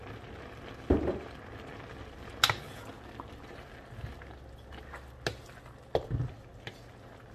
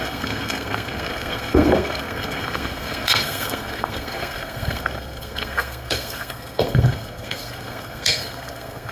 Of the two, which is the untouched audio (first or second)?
first